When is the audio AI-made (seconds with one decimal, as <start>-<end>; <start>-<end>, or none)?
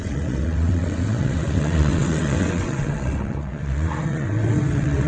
0.0-5.1